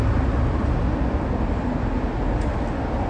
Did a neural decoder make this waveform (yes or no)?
no